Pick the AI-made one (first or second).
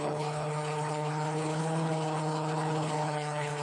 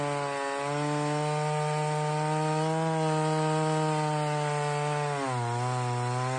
first